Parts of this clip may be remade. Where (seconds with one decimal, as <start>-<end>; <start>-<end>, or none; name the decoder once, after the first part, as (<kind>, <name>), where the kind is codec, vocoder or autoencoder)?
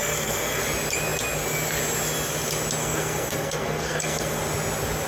0.0-0.6 (codec, SNAC); 2.8-4.4